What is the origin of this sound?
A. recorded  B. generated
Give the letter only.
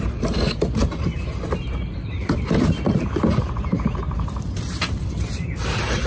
B